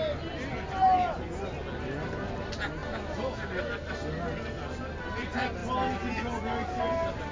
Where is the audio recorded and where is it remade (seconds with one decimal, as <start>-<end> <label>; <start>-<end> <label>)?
0.0-7.3 recorded